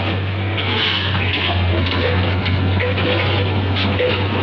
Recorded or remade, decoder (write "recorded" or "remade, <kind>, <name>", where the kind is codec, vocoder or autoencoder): remade, codec, SNAC